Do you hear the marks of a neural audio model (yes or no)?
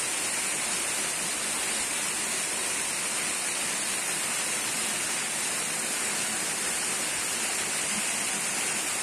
no